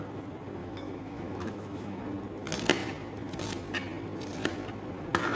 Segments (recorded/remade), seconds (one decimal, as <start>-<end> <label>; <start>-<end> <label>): 0.0-0.6 recorded; 0.6-2.0 remade; 2.0-5.3 recorded